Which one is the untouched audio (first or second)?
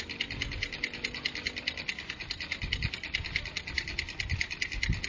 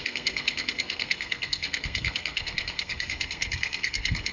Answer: first